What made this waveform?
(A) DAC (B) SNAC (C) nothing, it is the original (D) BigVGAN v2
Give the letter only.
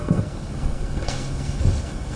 B